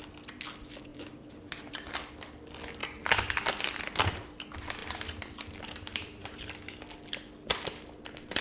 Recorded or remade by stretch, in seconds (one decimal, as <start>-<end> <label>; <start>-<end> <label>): 0.0-0.9 recorded; 0.9-1.6 remade; 1.6-4.8 recorded; 4.8-6.5 remade; 6.5-8.4 recorded